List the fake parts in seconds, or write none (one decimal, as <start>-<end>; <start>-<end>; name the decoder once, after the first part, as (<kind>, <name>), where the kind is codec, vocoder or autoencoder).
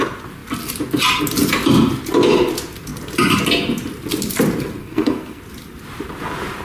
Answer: 4.8-5.4 (codec, SNAC)